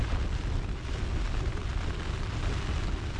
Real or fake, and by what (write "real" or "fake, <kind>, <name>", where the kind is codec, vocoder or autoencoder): real